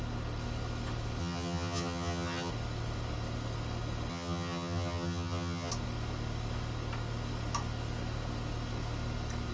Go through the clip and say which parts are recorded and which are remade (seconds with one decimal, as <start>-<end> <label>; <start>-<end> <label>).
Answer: 0.0-1.2 recorded; 1.2-2.5 remade; 2.5-4.1 recorded; 4.1-5.7 remade; 5.7-9.5 recorded